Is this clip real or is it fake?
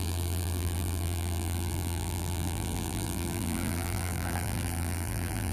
fake